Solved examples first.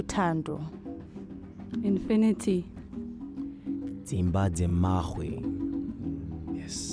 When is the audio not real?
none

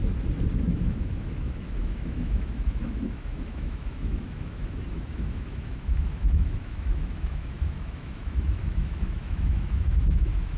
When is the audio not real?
0.6-10.6 (autoencoder, DAC-VAE)

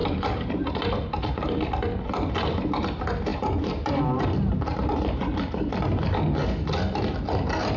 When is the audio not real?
3.3-4.0 (vocoder, BigVGAN v2)

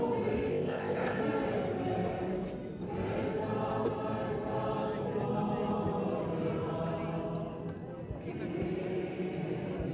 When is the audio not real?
0.5-1.2 (codec, ZipCodec)

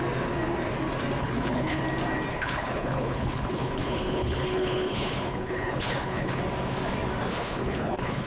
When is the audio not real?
1.2-1.8 (codec, HILCodec); 2.3-6.4; 7.3-8.3

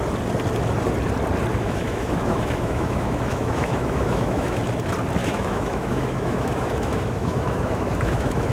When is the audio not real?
1.5-4.6 (autoencoder, DAC-VAE); 5.2-8.5

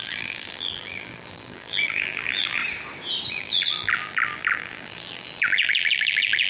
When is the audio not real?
0.0-2.6 (vocoder, BigVGAN v2); 3.3-6.5